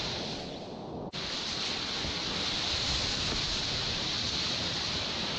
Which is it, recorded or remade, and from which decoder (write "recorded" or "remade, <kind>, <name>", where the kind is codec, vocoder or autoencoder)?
recorded